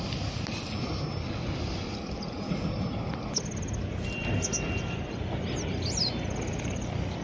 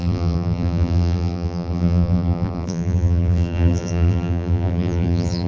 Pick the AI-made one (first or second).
second